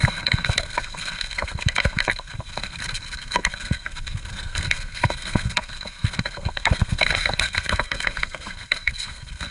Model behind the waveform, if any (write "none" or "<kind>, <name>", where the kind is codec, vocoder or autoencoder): codec, SNAC